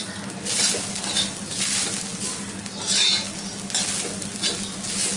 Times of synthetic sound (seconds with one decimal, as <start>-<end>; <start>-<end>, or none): none